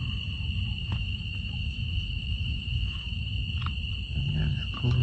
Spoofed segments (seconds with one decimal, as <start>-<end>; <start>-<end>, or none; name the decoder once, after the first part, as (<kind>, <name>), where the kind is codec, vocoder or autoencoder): 0.8-3.3 (autoencoder, DAC-VAE)